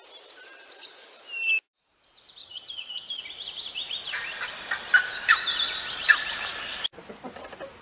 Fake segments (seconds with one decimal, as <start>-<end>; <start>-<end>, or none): 2.4-3.2